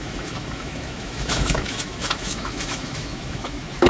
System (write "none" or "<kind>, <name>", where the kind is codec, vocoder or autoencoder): autoencoder, DAC-VAE